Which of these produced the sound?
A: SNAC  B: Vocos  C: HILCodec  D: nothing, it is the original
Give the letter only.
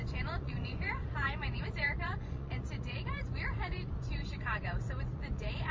B